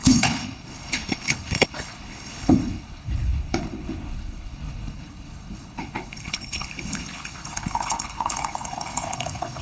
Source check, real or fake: fake